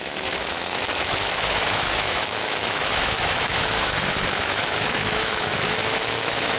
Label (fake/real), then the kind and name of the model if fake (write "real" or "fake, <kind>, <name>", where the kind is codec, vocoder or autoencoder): fake, autoencoder, DAC-VAE